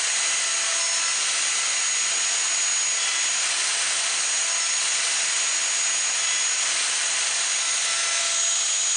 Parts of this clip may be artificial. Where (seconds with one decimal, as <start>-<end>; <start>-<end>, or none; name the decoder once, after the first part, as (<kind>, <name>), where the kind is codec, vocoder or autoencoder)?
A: none